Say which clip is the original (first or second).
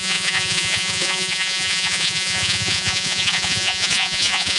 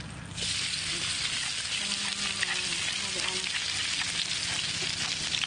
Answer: second